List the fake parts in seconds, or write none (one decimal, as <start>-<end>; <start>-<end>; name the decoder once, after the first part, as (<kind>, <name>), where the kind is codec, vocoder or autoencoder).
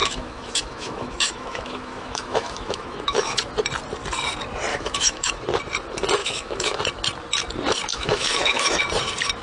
0.0-3.4 (autoencoder, DAC-VAE); 4.7-5.4; 6.2-6.8; 7.9-8.8